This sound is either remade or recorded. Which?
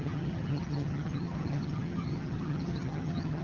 remade